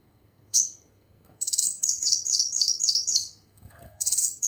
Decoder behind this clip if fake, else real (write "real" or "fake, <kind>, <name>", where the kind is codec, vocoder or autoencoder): fake, codec, SNAC